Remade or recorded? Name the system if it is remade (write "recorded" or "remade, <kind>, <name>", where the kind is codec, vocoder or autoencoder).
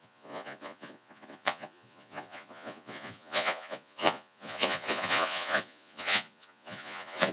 remade, vocoder, Vocos